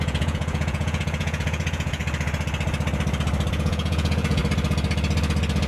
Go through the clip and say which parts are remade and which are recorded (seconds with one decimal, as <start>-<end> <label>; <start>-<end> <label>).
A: 0.0-2.0 remade; 2.0-3.5 recorded; 3.5-4.4 remade; 4.4-5.7 recorded